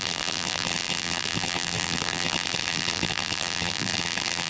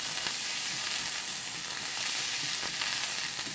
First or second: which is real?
second